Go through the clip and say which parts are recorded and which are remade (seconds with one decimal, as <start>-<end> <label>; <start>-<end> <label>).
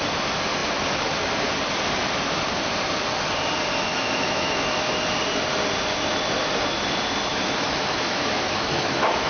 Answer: 0.0-3.9 recorded; 3.9-4.9 remade; 4.9-7.3 recorded; 7.3-9.3 remade